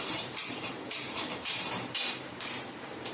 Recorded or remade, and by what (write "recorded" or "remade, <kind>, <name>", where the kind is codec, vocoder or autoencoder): remade, vocoder, BigVGAN v2